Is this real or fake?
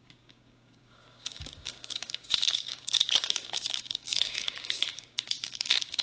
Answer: fake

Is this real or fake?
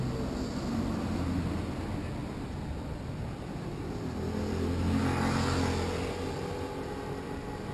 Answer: real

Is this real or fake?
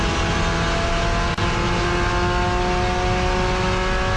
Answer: real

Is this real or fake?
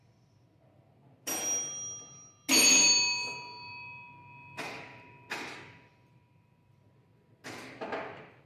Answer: real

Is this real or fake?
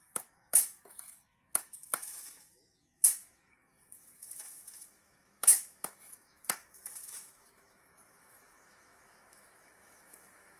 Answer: fake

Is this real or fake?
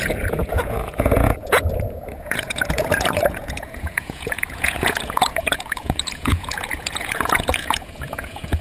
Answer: fake